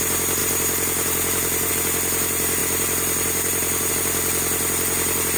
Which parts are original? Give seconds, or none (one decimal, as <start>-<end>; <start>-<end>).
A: 0.0-0.4; 1.7-2.6; 3.9-5.4